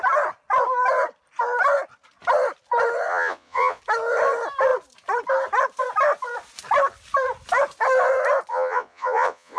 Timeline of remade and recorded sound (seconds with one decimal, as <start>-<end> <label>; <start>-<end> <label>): 0.0-3.1 recorded; 3.1-3.8 remade; 3.8-8.5 recorded; 8.5-9.6 remade